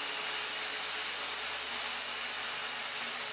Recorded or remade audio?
recorded